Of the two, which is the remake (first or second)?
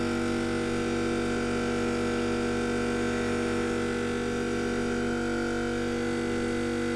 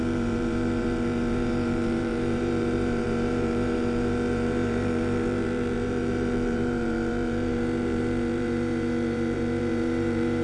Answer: second